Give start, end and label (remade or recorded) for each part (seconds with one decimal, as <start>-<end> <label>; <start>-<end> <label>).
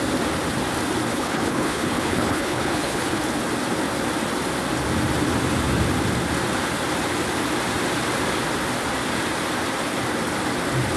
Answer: 0.0-1.1 recorded; 1.1-3.2 remade; 3.2-11.0 recorded